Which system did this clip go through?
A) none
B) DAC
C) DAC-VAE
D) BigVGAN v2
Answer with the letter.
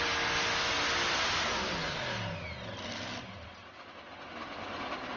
A